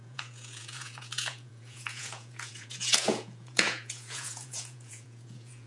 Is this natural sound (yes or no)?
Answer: no